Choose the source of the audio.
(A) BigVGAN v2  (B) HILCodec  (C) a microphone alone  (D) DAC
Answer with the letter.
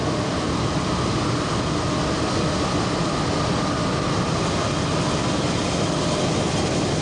C